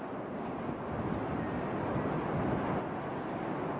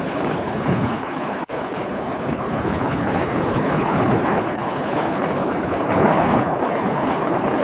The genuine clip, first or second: first